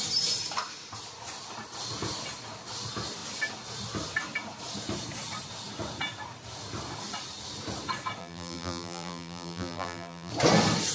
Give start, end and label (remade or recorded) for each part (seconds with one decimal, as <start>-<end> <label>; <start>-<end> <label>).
0.0-8.2 recorded; 8.2-10.3 remade; 10.3-10.9 recorded